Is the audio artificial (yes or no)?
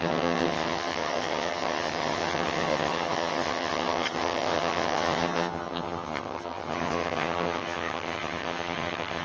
yes